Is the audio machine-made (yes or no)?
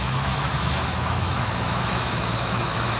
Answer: yes